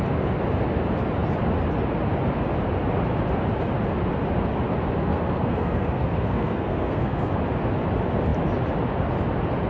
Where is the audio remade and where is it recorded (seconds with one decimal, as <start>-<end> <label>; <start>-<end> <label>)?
0.0-5.0 recorded; 5.0-7.3 remade; 7.3-9.7 recorded